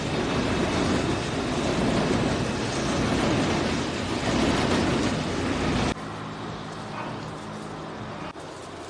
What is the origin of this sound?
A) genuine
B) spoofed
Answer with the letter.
A